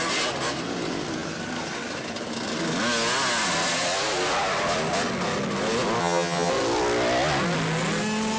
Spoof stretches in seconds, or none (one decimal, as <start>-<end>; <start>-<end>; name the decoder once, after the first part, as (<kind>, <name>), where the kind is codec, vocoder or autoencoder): 6.0-6.5 (vocoder, HiFi-GAN)